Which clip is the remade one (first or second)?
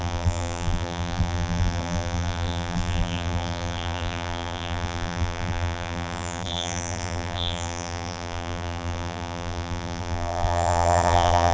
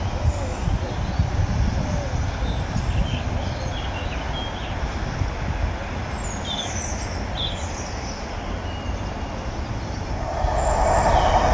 first